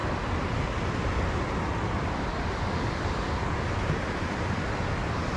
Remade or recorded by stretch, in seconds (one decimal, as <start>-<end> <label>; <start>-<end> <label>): 0.0-5.4 recorded